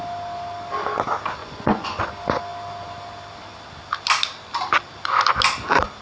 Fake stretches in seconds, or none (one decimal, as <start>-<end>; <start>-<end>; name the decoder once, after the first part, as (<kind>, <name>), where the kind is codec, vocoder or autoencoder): 1.4-2.0 (vocoder, Vocos)